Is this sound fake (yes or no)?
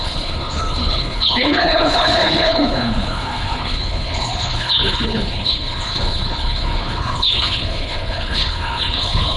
yes